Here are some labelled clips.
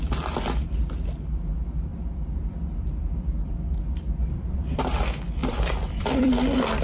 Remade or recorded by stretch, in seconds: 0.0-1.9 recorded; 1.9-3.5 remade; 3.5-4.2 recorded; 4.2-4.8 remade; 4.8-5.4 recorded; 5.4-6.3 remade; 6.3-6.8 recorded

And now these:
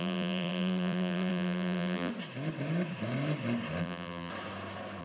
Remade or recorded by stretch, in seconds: 0.0-2.1 remade; 2.1-3.8 recorded; 3.8-4.3 remade; 4.3-5.0 recorded

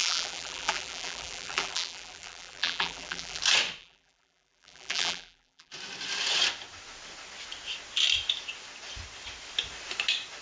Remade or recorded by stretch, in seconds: 0.0-3.4 remade; 3.4-3.8 recorded; 3.8-5.7 remade; 5.7-10.4 recorded